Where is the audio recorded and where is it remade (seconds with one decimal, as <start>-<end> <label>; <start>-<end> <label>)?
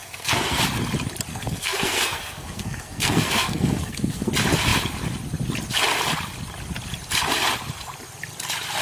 0.0-0.6 remade; 0.6-1.3 recorded; 1.3-4.3 remade; 4.3-8.8 recorded